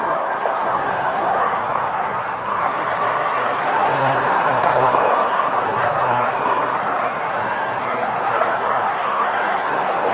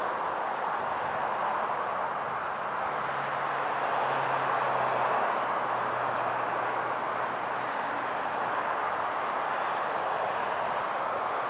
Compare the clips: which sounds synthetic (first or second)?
first